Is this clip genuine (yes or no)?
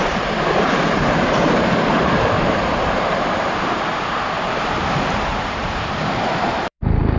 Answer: no